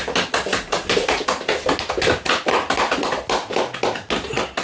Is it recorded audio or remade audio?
recorded